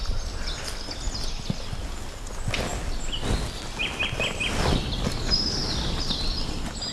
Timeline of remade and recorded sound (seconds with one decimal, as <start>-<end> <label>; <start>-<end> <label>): 0.0-6.9 recorded